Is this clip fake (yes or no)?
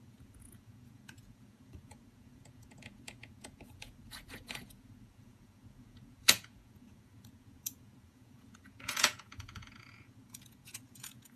yes